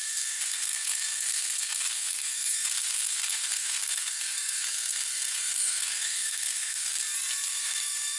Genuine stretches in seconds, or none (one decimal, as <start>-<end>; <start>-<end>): 7.0-7.5